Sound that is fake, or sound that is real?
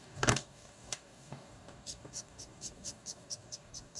fake